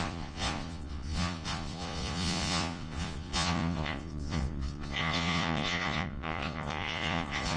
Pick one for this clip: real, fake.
fake